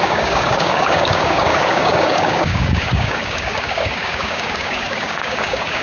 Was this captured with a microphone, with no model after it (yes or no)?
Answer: no